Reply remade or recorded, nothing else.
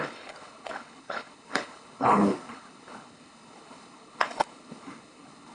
remade